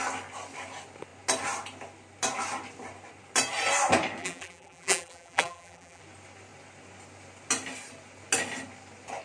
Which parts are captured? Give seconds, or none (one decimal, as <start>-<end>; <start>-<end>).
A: 0.0-4.2; 6.0-9.2